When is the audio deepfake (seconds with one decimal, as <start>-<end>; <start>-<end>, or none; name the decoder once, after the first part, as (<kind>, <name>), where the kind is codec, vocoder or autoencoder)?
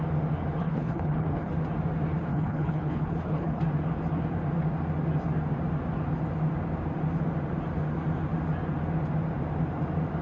0.6-1.5 (codec, HILCodec); 2.3-3.6